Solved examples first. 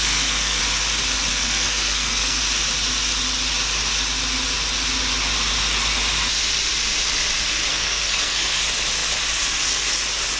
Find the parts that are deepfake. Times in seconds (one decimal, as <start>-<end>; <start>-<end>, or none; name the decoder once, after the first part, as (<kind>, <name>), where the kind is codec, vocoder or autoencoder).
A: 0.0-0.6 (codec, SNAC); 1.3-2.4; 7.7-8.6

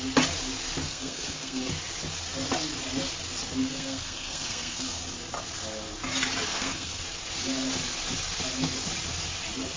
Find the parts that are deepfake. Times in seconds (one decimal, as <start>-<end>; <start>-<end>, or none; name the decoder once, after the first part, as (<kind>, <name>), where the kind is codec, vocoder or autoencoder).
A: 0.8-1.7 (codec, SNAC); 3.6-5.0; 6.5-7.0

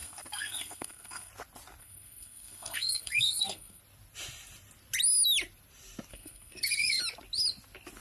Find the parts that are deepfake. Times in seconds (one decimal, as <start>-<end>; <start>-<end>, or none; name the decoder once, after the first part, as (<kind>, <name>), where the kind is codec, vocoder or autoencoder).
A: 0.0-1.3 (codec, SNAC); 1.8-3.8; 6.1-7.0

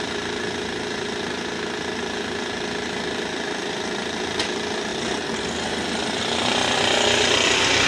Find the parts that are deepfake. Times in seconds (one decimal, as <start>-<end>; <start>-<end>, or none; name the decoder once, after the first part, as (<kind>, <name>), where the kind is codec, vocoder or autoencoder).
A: none

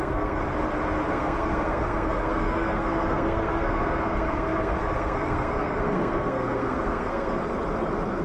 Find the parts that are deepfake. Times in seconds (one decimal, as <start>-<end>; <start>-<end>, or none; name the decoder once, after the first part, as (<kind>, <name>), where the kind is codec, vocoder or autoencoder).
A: 0.0-0.4 (codec, SNAC); 1.1-7.4

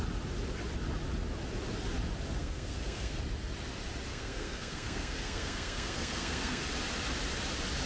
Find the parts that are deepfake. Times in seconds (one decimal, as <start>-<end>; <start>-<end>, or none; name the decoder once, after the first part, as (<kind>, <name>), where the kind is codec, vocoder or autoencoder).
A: 2.4-3.2 (codec, SNAC); 4.1-6.6

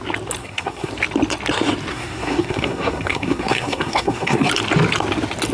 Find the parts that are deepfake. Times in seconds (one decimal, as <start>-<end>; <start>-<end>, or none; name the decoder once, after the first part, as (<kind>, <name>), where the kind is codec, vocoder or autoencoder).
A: 0.4-0.9 (codec, SNAC); 1.9-4.5

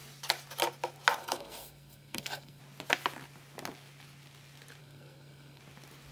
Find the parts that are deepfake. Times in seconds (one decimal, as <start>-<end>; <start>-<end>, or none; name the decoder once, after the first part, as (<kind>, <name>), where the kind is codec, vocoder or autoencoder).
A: 1.2-2.6 (codec, SNAC); 4.8-5.6